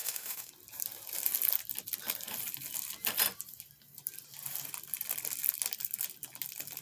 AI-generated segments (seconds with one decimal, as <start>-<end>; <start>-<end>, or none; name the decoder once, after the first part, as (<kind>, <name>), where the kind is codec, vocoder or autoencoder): 0.0-0.5 (autoencoder, DAC-VAE)